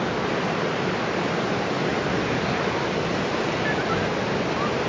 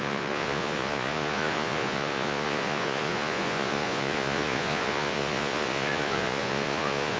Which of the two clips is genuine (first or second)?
first